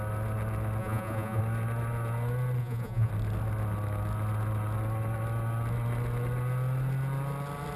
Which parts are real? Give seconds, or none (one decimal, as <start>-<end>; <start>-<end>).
0.0-0.8; 1.4-2.6; 3.1-7.8